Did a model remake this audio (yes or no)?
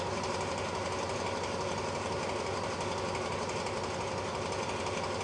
no